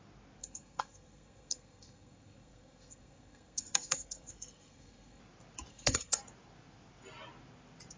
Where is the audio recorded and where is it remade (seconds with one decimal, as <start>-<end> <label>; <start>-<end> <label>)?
0.0-0.4 recorded; 0.4-5.2 remade; 5.2-5.7 recorded; 5.7-6.2 remade; 6.2-8.0 recorded